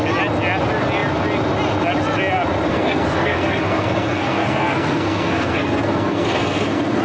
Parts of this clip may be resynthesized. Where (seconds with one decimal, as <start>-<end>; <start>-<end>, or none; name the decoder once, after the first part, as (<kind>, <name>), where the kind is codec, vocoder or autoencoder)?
2.7-7.0 (codec, SNAC)